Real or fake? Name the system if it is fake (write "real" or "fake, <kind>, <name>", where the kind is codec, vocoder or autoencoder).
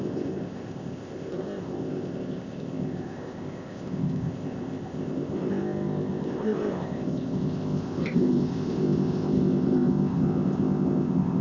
fake, codec, ZipCodec